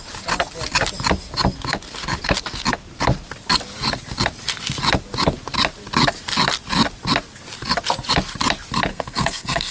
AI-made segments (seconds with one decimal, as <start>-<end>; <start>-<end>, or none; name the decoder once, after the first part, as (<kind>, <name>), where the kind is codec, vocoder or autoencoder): 8.9-9.7 (codec, SNAC)